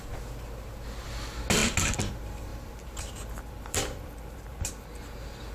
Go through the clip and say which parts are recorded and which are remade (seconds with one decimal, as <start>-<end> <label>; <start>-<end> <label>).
0.0-2.5 recorded; 2.5-4.7 remade; 4.7-5.5 recorded